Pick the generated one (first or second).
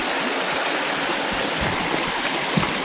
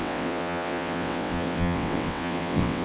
second